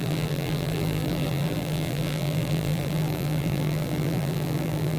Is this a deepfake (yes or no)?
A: yes